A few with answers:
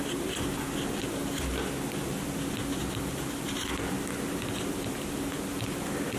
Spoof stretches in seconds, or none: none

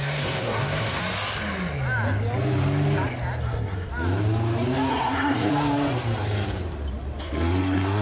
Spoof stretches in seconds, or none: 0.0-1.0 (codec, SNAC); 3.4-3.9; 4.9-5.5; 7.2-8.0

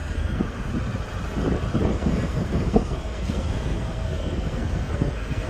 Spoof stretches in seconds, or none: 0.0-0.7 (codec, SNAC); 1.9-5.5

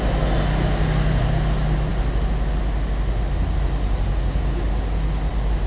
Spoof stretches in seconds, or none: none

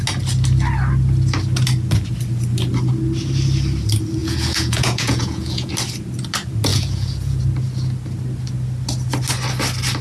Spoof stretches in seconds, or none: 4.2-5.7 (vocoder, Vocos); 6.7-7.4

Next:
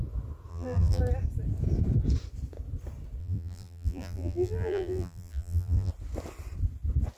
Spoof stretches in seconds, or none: 0.5-1.0 (vocoder, BigVGAN v2); 3.2-5.9

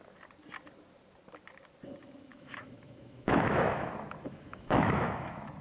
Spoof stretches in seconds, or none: 2.3-5.6 (autoencoder, DAC-VAE)